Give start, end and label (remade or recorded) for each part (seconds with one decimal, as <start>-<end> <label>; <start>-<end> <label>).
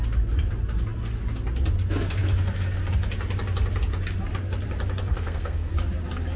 0.0-5.1 recorded; 5.1-5.7 remade; 5.7-6.4 recorded